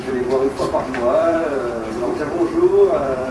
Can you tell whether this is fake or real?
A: fake